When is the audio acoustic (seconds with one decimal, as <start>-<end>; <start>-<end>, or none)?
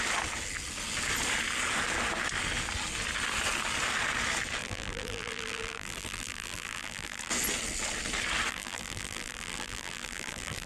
0.0-4.6; 7.3-8.5